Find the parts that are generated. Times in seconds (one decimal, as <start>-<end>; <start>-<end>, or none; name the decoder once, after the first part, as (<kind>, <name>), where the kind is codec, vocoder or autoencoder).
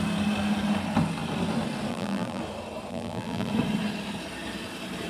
1.9-2.4 (vocoder, BigVGAN v2); 2.9-3.5